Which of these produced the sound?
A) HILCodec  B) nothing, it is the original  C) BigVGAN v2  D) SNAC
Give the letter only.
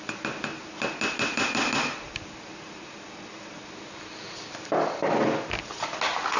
B